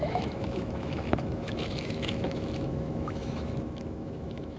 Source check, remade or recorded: remade